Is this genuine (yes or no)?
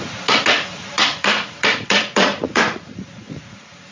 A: no